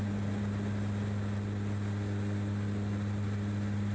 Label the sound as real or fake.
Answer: real